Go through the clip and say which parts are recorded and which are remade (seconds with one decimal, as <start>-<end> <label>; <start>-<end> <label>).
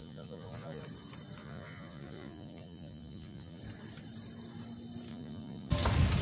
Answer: 0.0-0.8 remade; 0.8-1.4 recorded; 1.4-3.6 remade; 3.6-5.1 recorded; 5.1-5.7 remade; 5.7-6.2 recorded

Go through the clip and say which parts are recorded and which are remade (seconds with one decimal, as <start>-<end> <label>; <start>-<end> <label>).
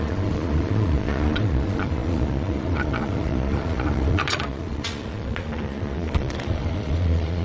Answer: 0.0-7.4 remade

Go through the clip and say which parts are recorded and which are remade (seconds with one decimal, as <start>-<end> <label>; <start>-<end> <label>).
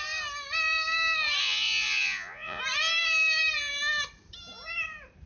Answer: 0.0-1.4 recorded; 1.4-2.6 remade; 2.6-5.3 recorded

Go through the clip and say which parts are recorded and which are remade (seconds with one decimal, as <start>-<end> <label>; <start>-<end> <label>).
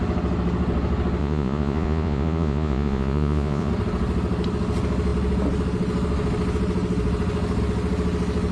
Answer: 0.0-1.2 recorded; 1.2-3.7 remade; 3.7-8.5 recorded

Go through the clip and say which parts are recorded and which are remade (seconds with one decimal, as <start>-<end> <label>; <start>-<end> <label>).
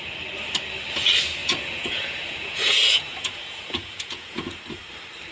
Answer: 0.0-1.4 recorded; 1.4-4.6 remade; 4.6-5.3 recorded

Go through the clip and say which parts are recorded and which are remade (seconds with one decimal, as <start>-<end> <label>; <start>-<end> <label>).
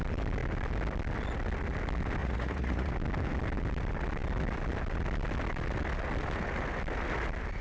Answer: 0.0-2.2 recorded; 2.2-2.9 remade; 2.9-7.6 recorded